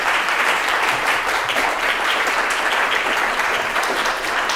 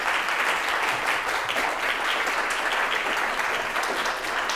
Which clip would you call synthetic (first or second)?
first